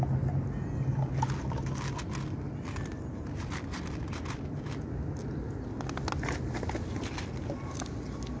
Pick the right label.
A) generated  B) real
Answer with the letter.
B